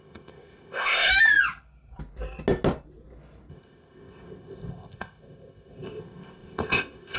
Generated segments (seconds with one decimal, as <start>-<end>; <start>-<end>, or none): 0.0-1.1; 3.5-7.2